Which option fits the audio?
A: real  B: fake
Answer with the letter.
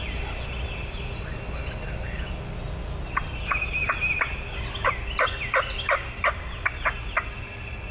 A